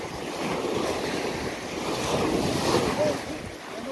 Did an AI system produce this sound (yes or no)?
no